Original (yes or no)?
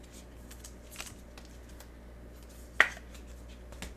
yes